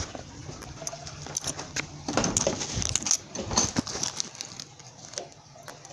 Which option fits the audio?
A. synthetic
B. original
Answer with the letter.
B